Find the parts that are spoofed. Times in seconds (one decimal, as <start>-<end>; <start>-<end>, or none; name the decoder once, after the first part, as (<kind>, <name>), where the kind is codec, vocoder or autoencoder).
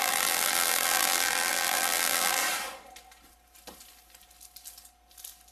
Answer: 0.0-2.4 (vocoder, BigVGAN v2)